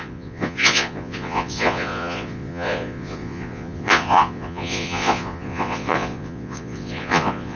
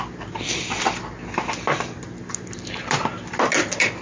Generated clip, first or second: first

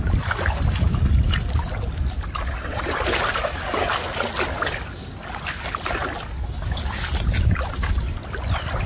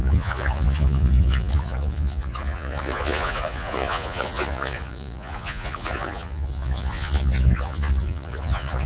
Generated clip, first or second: second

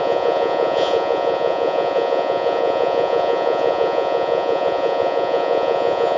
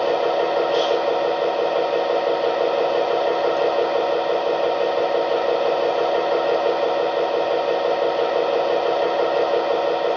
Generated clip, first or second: first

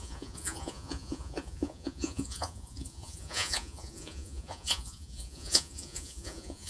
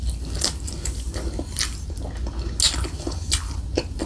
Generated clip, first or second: first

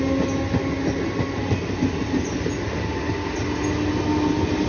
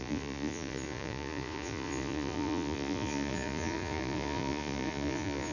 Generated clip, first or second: second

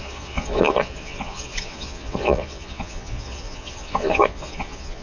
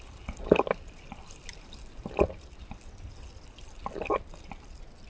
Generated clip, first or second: first